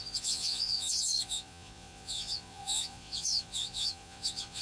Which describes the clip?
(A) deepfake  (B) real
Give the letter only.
A